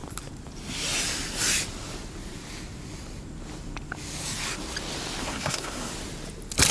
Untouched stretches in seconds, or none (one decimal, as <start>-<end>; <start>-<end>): 0.0-5.2; 5.9-6.7